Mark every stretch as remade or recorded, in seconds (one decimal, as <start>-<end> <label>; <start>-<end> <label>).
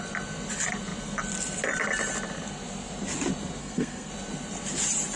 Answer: 0.0-3.6 recorded; 3.6-4.1 remade; 4.1-5.2 recorded